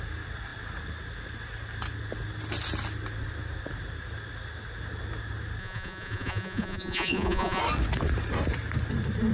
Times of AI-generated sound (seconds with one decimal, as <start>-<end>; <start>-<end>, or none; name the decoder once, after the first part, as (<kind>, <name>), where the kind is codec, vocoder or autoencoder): 5.6-7.6 (vocoder, Vocos)